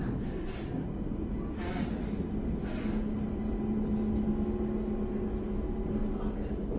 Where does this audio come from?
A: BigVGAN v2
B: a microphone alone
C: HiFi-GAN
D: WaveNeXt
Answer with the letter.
B